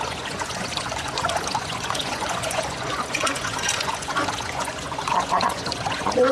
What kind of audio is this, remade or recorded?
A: remade